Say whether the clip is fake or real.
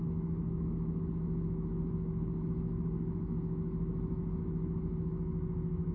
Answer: fake